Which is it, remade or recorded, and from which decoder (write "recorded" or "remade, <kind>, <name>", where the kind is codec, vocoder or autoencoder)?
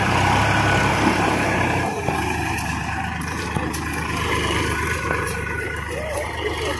remade, vocoder, BigVGAN v2